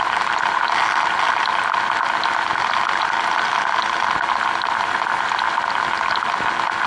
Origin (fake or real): real